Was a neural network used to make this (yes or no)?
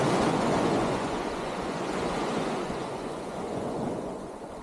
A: yes